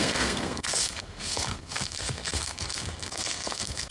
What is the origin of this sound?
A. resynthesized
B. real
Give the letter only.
A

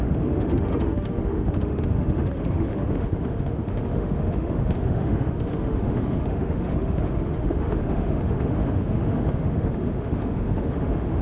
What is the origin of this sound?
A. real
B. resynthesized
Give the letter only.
B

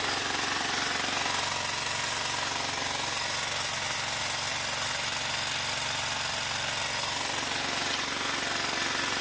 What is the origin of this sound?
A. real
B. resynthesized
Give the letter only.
A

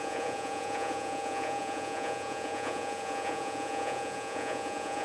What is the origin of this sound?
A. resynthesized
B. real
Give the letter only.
A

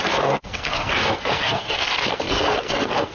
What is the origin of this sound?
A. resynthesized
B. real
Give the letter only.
A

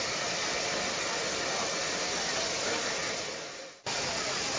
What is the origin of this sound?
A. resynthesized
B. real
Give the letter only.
B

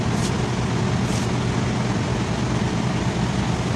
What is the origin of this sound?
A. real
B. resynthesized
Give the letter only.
A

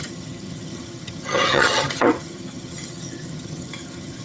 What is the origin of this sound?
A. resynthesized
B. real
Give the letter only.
A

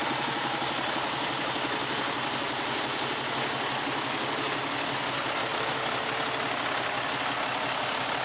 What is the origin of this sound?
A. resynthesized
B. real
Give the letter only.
B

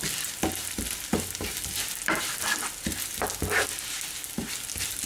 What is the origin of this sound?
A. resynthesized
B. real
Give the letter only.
B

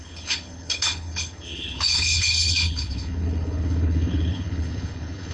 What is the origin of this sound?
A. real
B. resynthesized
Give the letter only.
B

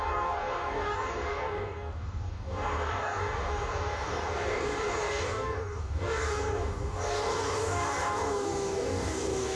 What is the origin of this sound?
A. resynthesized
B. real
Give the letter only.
A